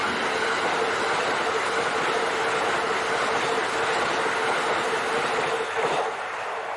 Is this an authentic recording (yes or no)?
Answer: yes